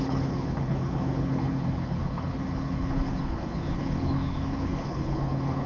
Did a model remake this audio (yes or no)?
yes